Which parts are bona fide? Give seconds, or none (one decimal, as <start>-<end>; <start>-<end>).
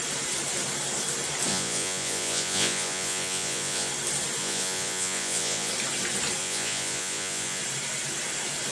0.0-1.5; 3.9-4.4; 5.7-6.4; 7.6-8.7